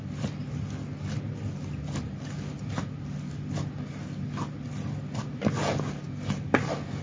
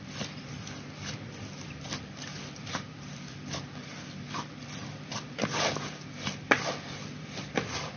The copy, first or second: second